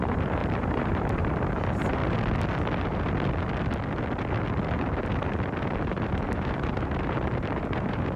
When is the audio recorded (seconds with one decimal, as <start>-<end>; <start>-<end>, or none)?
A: 2.0-5.6

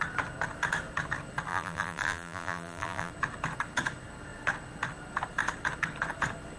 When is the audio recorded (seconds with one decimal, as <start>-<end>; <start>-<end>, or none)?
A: 0.0-1.5; 3.1-6.6

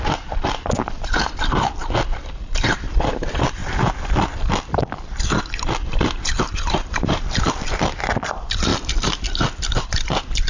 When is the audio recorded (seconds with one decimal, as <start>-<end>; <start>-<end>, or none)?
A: 3.6-7.5; 8.7-9.7

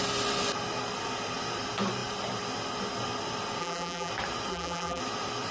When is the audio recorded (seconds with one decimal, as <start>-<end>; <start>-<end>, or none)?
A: 0.0-3.6; 4.1-4.5; 5.0-5.5

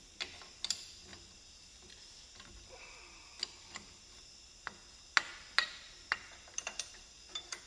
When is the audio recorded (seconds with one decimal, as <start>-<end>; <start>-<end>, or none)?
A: 0.0-7.7